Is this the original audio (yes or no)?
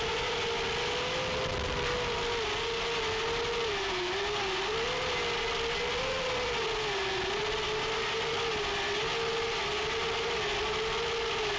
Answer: yes